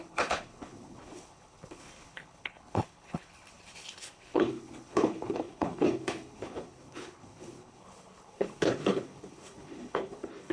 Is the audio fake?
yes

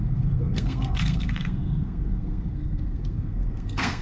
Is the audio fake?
yes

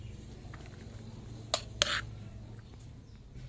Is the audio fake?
no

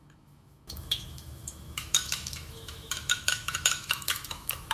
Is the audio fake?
yes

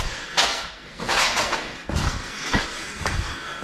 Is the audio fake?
yes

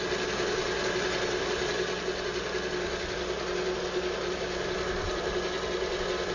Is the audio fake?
no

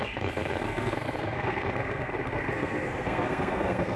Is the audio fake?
yes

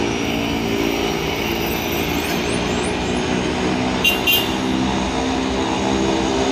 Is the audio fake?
no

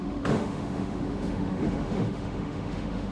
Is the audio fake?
yes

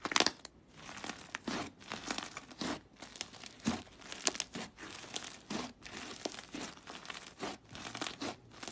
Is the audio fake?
no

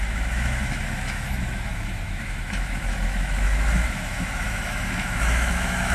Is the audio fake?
yes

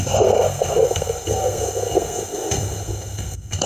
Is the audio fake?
yes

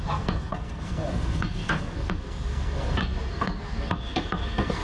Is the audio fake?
yes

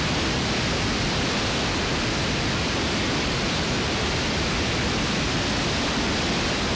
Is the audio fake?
no